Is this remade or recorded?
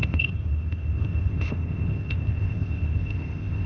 remade